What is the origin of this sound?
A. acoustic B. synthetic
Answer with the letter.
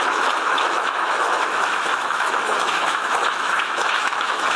B